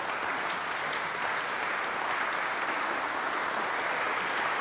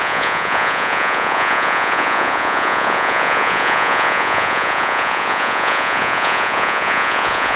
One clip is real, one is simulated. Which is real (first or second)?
first